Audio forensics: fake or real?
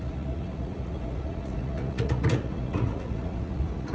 fake